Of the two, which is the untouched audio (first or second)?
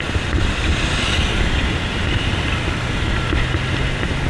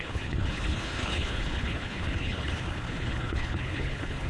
first